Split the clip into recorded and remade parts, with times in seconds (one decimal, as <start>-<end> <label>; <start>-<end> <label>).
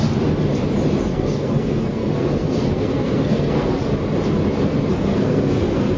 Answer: 0.0-1.1 recorded; 1.1-3.8 remade; 3.8-4.9 recorded; 4.9-6.0 remade